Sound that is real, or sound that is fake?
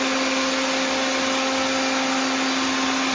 real